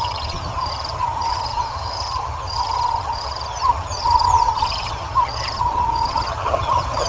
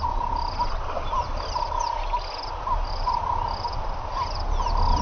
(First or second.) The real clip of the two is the second